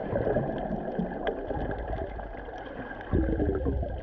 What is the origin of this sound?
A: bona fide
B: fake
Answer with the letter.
A